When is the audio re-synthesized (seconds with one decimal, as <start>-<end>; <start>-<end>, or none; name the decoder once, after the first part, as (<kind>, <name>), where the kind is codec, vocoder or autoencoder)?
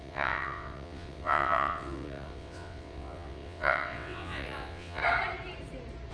0.0-5.0 (vocoder, WaveNeXt)